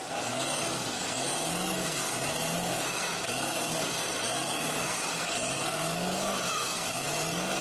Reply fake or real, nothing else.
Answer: fake